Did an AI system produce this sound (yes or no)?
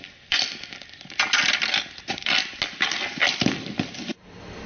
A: no